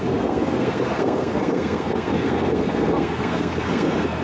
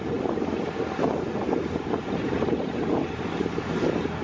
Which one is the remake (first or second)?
first